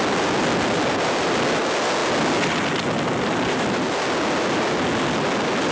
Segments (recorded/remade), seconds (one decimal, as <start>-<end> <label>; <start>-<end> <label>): 0.0-5.7 recorded